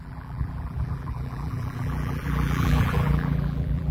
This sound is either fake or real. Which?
fake